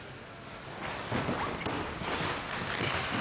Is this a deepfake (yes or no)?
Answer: no